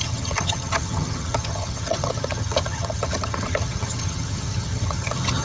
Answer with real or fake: fake